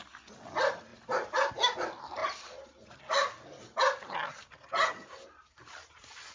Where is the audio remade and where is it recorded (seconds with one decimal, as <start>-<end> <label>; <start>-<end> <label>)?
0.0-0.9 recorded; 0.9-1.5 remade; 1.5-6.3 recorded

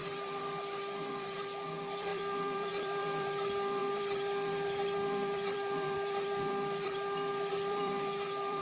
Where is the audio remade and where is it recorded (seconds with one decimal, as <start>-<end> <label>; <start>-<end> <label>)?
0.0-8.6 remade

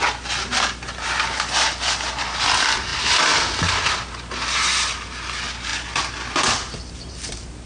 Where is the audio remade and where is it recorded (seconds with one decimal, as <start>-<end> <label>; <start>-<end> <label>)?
0.0-7.7 recorded

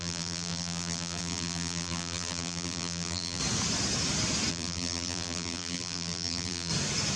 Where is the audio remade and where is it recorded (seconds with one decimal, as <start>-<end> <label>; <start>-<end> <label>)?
0.0-3.4 remade; 3.4-4.5 recorded; 4.5-6.7 remade; 6.7-7.2 recorded

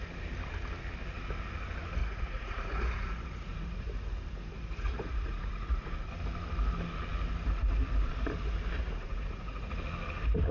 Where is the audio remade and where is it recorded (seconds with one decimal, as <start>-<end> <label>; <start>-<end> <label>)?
0.0-2.0 recorded; 2.0-6.1 remade; 6.1-8.8 recorded; 8.8-9.7 remade; 9.7-10.5 recorded